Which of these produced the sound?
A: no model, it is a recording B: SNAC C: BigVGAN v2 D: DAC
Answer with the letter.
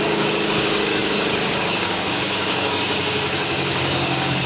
D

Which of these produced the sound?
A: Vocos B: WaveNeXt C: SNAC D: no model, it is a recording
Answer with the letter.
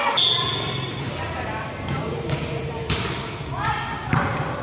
D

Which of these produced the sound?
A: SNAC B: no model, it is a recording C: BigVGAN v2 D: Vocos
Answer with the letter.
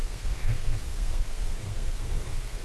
A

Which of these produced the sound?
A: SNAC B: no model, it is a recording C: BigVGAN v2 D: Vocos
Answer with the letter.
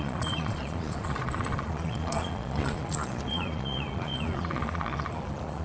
D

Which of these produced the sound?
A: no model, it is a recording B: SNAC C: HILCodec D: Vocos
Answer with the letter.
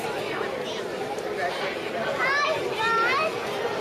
A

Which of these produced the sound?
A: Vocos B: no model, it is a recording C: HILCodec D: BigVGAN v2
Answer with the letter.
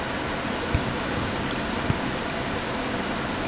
B